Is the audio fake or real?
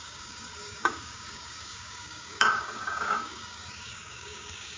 fake